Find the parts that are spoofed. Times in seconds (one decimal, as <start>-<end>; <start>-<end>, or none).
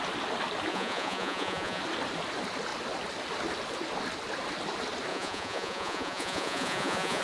0.7-1.8; 5.1-7.2